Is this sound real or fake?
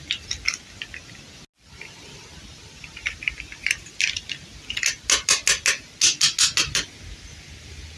real